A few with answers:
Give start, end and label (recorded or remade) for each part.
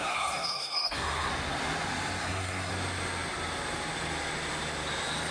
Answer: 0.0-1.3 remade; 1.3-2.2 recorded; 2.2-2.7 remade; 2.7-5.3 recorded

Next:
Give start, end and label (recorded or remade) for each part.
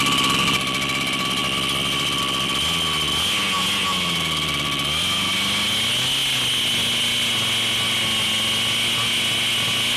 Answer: 0.0-10.0 recorded